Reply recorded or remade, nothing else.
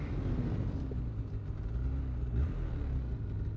recorded